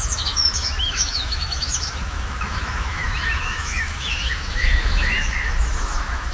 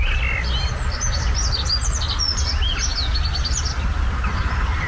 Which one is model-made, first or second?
first